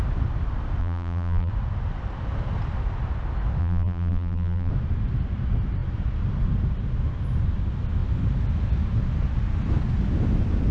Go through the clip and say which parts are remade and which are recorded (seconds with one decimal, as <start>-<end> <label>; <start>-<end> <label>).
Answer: 0.0-0.8 recorded; 0.8-1.5 remade; 1.5-3.6 recorded; 3.6-4.7 remade; 4.7-10.7 recorded